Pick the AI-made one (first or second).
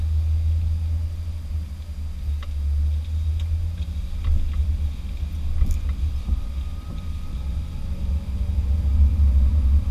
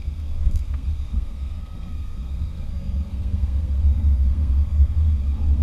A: second